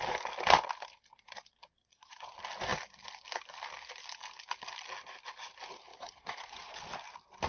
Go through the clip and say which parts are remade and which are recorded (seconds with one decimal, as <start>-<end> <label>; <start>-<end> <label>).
0.0-1.8 recorded; 1.8-2.3 remade; 2.3-5.9 recorded; 5.9-6.8 remade; 6.8-7.5 recorded